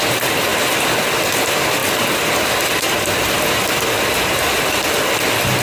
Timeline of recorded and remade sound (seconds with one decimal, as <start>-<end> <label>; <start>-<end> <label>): 0.0-5.6 recorded